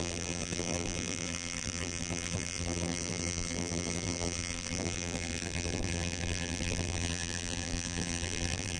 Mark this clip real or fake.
fake